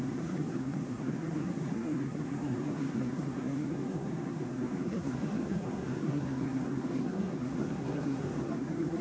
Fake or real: fake